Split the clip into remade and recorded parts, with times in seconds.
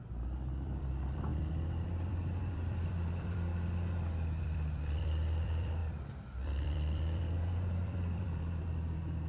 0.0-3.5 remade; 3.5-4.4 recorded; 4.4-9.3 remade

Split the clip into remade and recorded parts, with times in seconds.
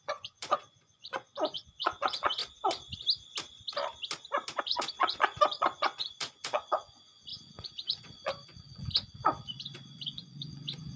0.0-2.4 remade; 2.4-4.6 recorded; 4.6-11.0 remade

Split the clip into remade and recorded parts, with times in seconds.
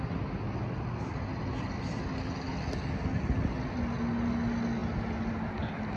0.0-6.0 recorded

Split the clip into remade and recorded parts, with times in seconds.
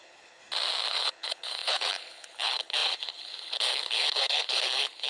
0.0-0.4 remade; 0.4-0.9 recorded; 0.9-5.1 remade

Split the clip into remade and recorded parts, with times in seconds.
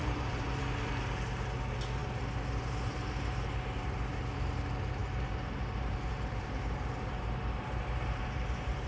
0.0-0.9 remade; 0.9-2.0 recorded; 2.0-4.2 remade; 4.2-5.0 recorded; 5.0-8.9 remade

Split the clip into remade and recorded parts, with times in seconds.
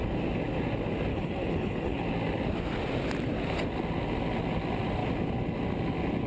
0.0-1.1 recorded; 1.1-2.0 remade; 2.0-6.3 recorded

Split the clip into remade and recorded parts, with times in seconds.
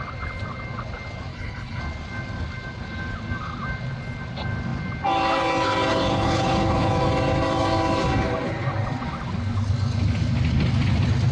0.0-1.3 recorded; 1.3-1.8 remade; 1.8-5.9 recorded; 5.9-6.9 remade; 6.9-11.3 recorded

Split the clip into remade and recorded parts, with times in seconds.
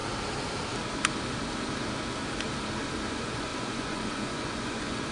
0.0-3.1 recorded; 3.1-5.1 remade